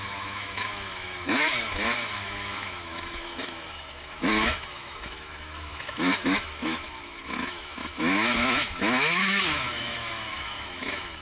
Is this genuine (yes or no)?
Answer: no